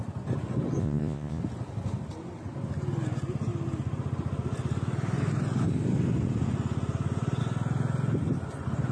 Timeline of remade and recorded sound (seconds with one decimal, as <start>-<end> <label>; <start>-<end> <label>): 0.0-0.8 recorded; 0.8-1.4 remade; 1.4-8.9 recorded